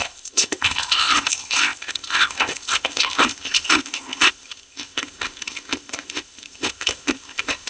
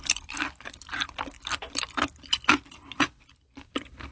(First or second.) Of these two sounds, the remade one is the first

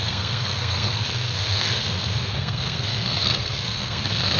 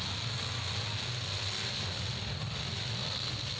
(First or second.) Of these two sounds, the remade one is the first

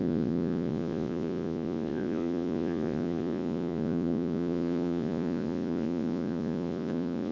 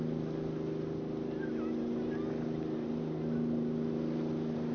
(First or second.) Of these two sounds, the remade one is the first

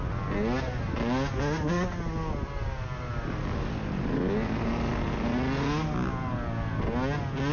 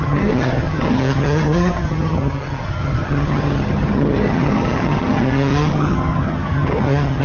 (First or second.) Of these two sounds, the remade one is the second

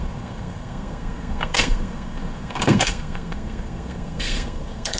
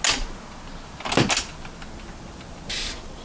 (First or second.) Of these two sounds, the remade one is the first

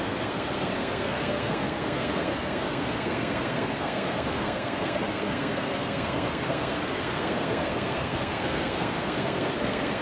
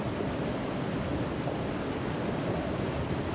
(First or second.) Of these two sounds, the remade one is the first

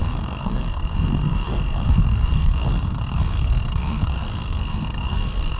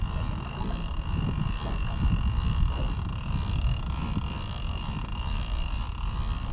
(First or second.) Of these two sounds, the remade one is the first